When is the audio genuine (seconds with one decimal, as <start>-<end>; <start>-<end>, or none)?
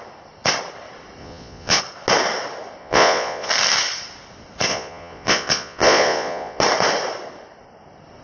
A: 0.0-1.2; 1.8-2.8; 3.5-4.7; 6.6-8.2